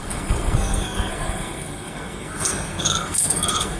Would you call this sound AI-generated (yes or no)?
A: yes